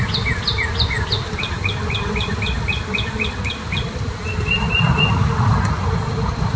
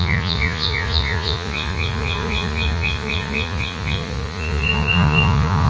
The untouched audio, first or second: first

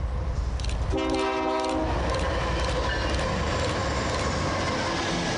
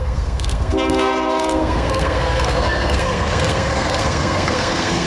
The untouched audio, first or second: first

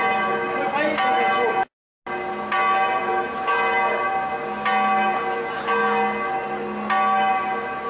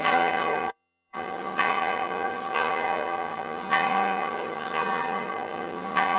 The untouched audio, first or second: first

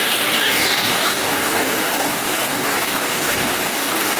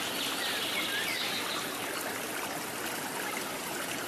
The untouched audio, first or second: second